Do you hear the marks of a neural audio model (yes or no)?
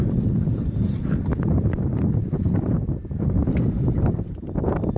yes